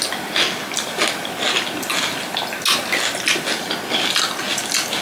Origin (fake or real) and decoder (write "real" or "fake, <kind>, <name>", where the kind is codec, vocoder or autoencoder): real